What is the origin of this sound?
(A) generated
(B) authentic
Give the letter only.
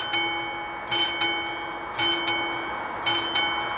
B